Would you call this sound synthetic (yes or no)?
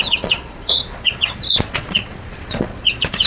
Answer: yes